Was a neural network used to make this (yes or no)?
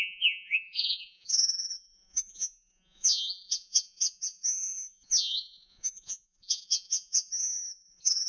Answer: yes